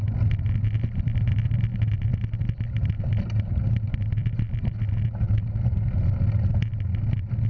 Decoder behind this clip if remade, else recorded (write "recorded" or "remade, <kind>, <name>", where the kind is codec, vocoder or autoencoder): recorded